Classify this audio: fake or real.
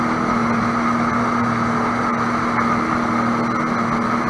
real